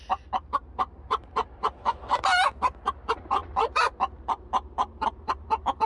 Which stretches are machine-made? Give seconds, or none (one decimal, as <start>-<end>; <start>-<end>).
0.0-2.1; 2.7-5.9